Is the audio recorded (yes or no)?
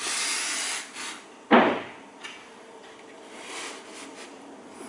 yes